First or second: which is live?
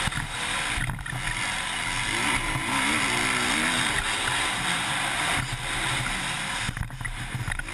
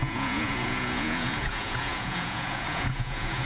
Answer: first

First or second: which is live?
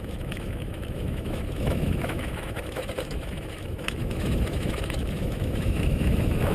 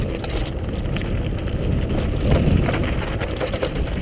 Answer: second